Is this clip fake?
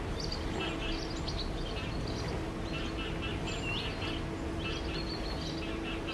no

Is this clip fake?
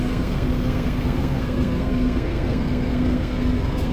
yes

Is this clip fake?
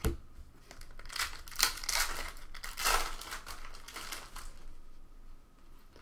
no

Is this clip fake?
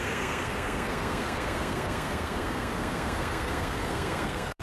yes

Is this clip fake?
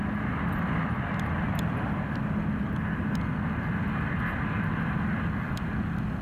no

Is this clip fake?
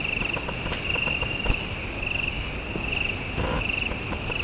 no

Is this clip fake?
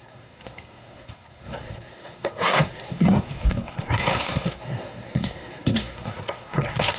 yes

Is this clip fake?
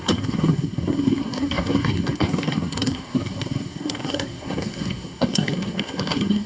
yes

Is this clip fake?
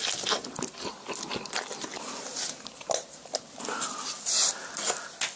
no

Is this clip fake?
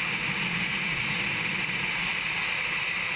no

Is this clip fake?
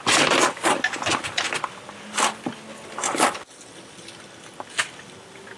no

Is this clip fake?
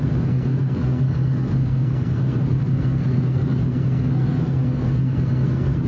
yes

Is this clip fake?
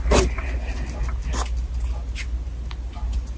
no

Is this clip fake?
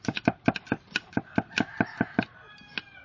no